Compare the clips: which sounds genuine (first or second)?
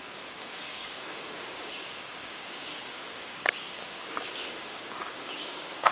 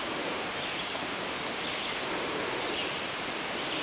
second